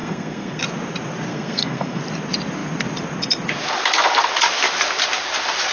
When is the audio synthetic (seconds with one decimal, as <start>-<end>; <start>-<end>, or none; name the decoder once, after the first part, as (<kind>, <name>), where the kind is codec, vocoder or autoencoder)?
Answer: 0.0-0.6 (codec, SNAC); 1.3-2.0